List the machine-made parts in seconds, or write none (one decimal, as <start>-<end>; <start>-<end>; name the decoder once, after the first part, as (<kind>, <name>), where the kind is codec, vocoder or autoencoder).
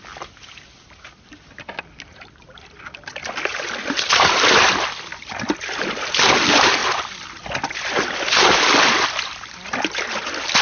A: none